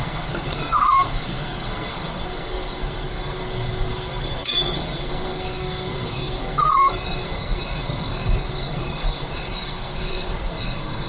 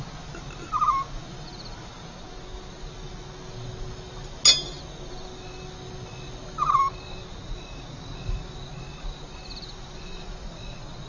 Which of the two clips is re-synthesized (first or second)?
first